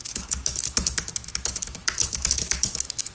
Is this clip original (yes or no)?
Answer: no